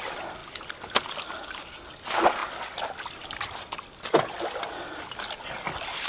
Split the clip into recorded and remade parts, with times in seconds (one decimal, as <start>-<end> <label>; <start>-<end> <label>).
0.0-6.1 recorded